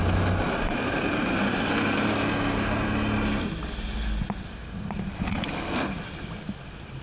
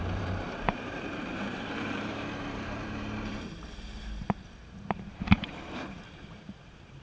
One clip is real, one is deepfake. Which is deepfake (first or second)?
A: second